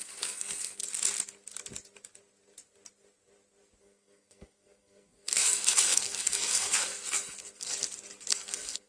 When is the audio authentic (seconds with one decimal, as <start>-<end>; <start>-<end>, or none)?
0.8-3.8; 7.7-8.3